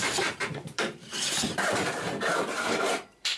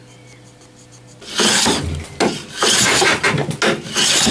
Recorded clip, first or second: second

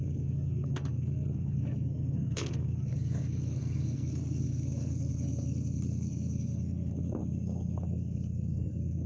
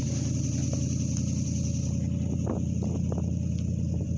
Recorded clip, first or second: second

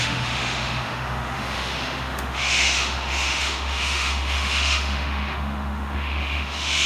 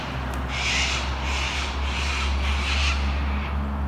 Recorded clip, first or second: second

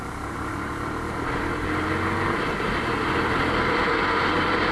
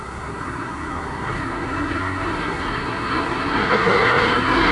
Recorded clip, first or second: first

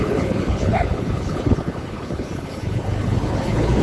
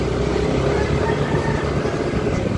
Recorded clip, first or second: second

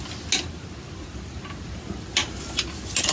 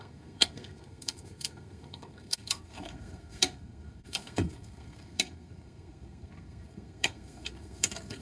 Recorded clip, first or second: first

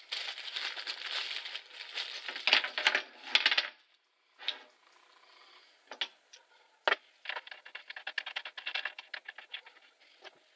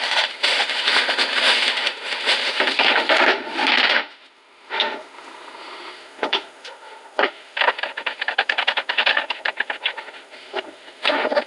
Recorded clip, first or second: first